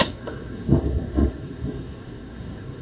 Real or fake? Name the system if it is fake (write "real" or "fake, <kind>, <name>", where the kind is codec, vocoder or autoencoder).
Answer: fake, codec, SNAC